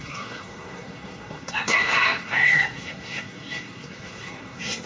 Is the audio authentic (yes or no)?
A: no